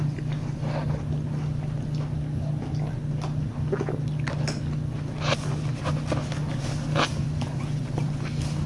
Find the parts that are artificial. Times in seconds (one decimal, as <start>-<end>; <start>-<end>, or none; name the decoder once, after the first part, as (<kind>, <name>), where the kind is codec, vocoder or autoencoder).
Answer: 6.5-8.7 (vocoder, BigVGAN v2)